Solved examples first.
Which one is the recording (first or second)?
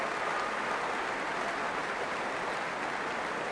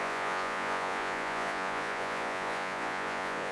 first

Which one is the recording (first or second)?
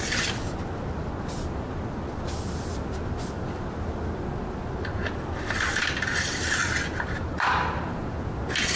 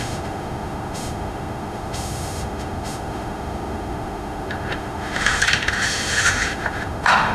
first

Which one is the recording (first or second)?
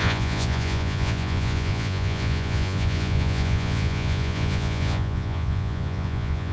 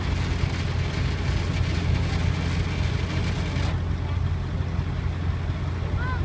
second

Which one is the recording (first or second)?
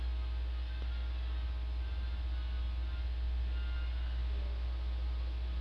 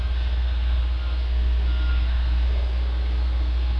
first